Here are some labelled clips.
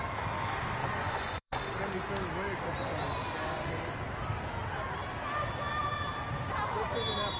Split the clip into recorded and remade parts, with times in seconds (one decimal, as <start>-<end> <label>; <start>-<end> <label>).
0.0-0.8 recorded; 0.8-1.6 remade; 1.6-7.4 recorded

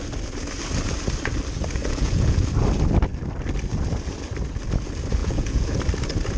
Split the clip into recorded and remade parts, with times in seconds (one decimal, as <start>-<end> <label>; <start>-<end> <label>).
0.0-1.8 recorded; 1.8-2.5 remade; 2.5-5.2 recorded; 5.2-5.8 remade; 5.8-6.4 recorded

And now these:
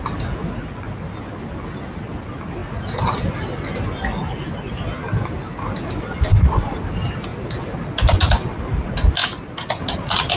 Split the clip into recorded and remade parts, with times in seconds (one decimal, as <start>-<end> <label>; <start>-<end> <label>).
0.0-6.3 recorded; 6.3-6.8 remade; 6.8-10.4 recorded

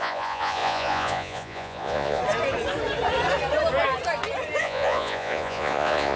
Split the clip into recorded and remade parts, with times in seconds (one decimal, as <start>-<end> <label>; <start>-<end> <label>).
0.0-2.2 remade; 2.2-4.6 recorded; 4.6-6.2 remade